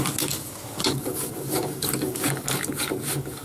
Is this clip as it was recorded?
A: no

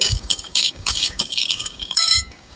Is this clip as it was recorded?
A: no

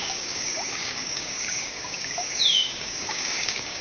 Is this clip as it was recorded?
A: no